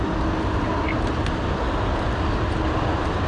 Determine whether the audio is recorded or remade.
recorded